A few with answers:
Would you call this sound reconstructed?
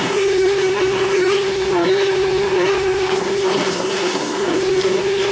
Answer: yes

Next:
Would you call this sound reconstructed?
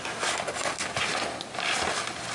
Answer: no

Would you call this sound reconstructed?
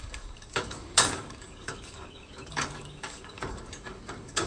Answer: yes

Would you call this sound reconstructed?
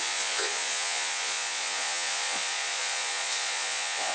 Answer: yes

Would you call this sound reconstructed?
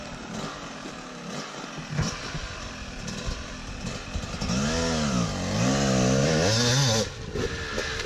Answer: no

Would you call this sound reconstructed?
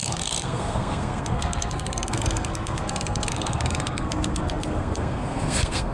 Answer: yes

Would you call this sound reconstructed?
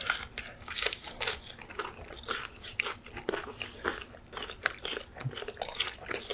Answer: no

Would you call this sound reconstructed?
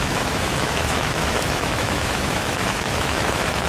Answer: yes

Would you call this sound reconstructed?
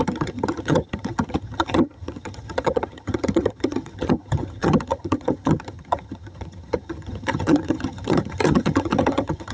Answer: yes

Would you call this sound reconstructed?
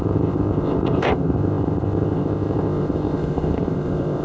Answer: yes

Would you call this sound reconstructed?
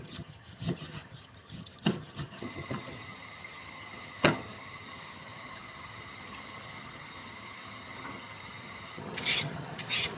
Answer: yes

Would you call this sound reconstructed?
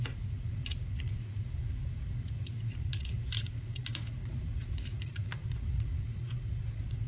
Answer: yes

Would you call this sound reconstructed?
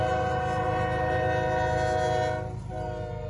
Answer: no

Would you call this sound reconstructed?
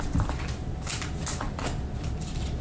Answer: no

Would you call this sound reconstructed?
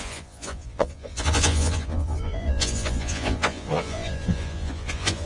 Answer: yes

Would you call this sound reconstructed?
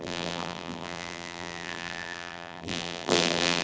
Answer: yes